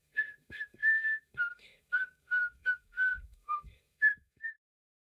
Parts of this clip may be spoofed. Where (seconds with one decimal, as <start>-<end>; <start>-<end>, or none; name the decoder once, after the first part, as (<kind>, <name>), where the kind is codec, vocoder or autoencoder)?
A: 0.0-5.0 (codec, SNAC)